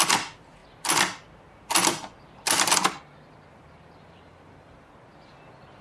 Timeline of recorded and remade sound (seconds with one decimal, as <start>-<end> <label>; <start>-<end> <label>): 0.0-5.8 recorded